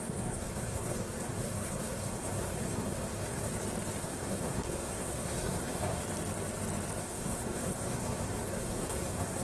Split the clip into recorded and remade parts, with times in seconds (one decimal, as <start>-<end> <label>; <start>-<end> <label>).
0.0-3.5 remade; 3.5-4.0 recorded; 4.0-6.0 remade; 6.0-7.0 recorded; 7.0-9.4 remade